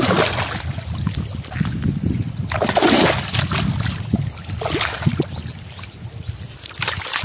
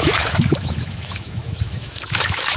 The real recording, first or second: first